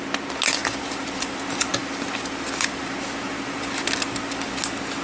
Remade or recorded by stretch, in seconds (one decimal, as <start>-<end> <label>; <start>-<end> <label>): 0.0-5.0 recorded